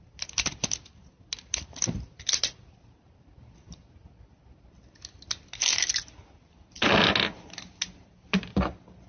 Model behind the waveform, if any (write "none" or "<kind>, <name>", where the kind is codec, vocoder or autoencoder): none